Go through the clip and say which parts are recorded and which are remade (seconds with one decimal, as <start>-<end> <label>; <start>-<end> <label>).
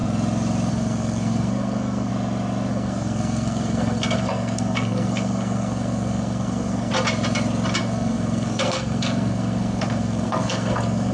0.0-0.7 recorded; 0.7-2.1 remade; 2.1-2.7 recorded; 2.7-6.9 remade; 6.9-7.8 recorded; 7.8-11.1 remade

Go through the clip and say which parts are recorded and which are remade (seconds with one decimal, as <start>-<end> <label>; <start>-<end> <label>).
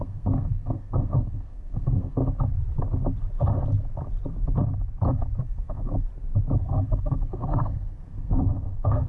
0.0-2.2 remade; 2.2-5.4 recorded; 5.4-6.1 remade; 6.1-6.6 recorded; 6.6-9.1 remade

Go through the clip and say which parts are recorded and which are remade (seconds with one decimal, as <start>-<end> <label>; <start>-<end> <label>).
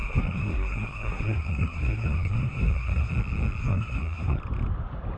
0.0-3.1 remade; 3.1-3.6 recorded; 3.6-4.4 remade; 4.4-5.2 recorded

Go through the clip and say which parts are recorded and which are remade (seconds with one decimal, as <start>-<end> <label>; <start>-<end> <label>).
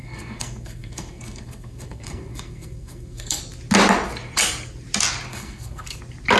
0.0-3.4 remade; 3.4-5.3 recorded; 5.3-6.0 remade; 6.0-6.4 recorded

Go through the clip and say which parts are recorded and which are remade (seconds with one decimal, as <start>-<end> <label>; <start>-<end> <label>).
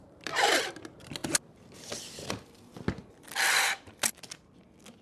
0.0-5.0 recorded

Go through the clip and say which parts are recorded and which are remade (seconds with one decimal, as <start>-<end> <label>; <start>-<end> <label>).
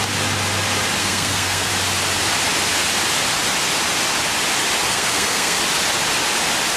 0.0-1.0 recorded; 1.0-1.7 remade; 1.7-4.9 recorded; 4.9-5.6 remade; 5.6-6.8 recorded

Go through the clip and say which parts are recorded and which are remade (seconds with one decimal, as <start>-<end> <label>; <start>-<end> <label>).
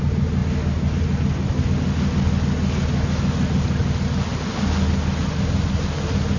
0.0-6.4 recorded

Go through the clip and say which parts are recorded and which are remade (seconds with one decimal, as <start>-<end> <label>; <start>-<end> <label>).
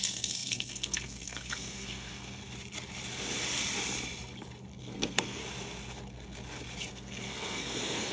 0.0-2.4 remade; 2.4-4.8 recorded; 4.8-5.4 remade; 5.4-6.9 recorded; 6.9-8.1 remade